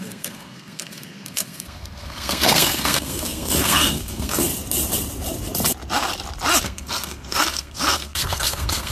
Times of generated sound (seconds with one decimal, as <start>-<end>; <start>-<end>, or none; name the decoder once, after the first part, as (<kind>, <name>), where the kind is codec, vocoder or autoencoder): 0.0-4.5 (codec, SNAC); 6.6-8.9